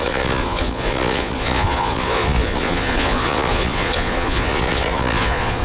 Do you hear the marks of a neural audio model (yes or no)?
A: yes